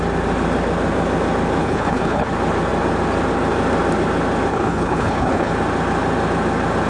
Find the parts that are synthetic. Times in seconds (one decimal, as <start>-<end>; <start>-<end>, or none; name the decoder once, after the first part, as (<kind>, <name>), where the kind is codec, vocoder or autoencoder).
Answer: 1.6-2.3 (codec, HILCodec); 4.5-5.5